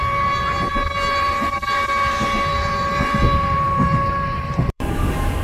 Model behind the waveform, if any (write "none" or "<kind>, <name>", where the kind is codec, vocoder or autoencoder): vocoder, BigVGAN v2